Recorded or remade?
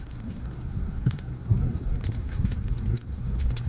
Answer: remade